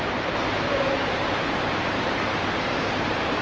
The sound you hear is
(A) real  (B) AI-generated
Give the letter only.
B